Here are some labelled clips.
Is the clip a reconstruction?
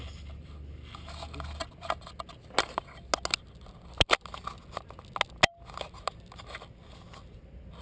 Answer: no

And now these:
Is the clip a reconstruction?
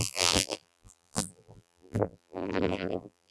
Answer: yes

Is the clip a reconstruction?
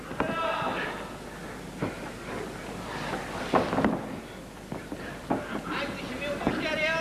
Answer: no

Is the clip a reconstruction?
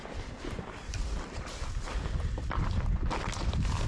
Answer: yes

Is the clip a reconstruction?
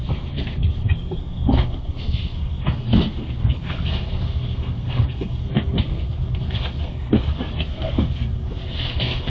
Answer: yes